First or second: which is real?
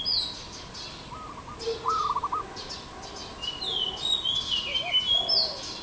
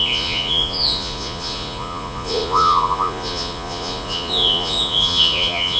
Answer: first